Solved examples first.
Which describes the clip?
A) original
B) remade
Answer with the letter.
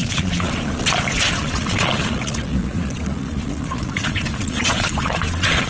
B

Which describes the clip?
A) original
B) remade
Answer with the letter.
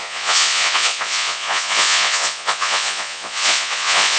B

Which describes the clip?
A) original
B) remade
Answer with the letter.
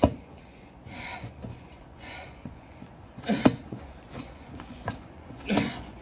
B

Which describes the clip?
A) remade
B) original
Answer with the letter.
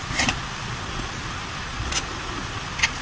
A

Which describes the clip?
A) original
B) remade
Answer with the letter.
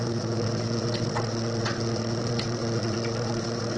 B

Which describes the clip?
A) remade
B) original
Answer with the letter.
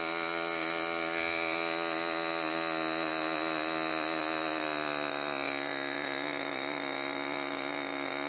B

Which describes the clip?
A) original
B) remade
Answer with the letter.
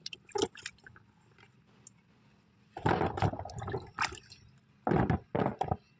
A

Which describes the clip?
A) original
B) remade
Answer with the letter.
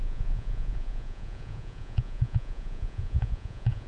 B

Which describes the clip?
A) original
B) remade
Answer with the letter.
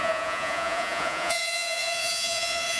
B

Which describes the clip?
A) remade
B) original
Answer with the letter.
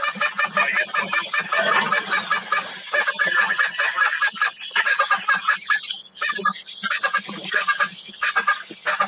B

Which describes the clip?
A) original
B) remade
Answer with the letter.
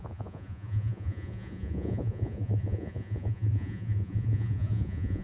B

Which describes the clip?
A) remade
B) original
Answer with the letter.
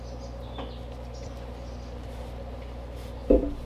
B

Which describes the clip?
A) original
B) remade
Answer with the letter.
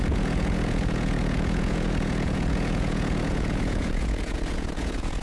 B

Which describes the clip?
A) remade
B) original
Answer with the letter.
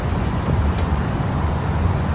A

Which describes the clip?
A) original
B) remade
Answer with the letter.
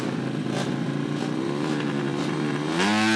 A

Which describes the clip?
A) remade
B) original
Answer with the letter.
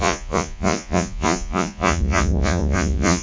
A